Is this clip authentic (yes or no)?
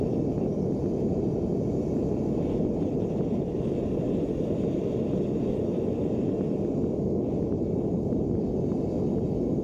yes